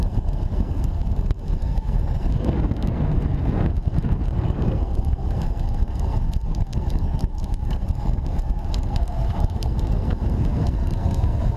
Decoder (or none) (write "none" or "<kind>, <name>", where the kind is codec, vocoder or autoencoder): codec, SNAC